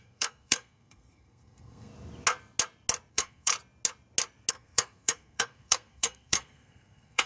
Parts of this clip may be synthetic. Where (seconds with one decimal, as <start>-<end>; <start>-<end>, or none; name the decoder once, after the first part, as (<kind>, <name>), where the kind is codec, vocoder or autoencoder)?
0.0-1.9 (codec, SNAC); 3.1-3.5; 4.5-7.3